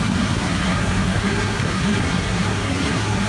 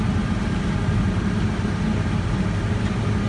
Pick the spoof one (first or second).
first